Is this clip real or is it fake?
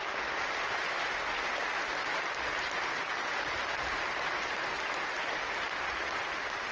real